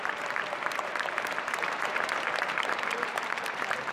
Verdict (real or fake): fake